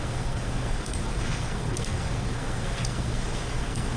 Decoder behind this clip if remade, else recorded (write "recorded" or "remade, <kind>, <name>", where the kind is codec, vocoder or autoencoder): remade, codec, SNAC